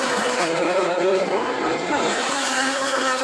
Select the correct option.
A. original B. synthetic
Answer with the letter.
B